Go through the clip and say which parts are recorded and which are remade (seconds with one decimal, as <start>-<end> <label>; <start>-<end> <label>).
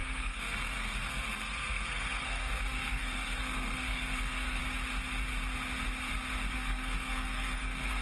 0.0-4.6 remade; 4.6-6.5 recorded; 6.5-8.0 remade